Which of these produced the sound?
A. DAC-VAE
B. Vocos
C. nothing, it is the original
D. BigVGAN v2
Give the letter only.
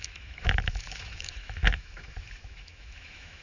A